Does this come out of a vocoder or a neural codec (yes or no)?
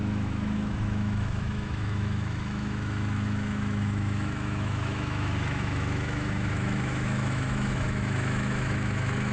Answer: yes